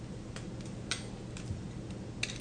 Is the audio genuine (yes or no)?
yes